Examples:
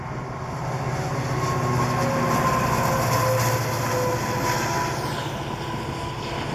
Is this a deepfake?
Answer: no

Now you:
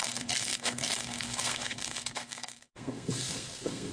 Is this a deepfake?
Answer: yes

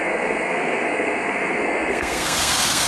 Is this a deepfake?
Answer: yes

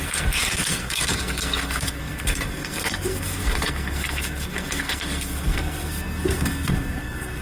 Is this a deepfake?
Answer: yes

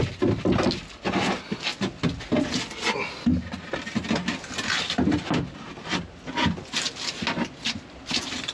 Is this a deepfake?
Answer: no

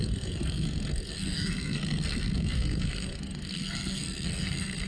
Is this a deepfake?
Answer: yes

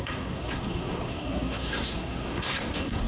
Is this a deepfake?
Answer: yes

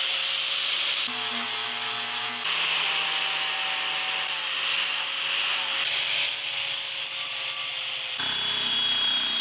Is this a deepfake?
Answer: no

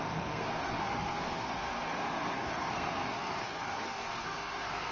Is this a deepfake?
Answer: yes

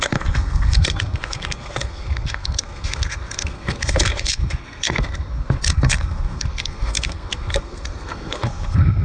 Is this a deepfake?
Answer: yes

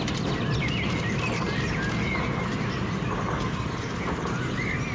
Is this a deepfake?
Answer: no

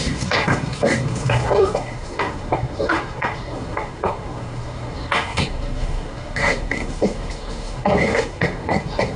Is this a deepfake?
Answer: yes